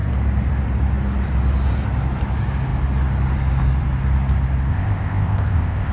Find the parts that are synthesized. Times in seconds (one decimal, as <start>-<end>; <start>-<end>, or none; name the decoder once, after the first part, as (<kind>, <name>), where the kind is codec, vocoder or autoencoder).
4.7-5.9 (codec, ZipCodec)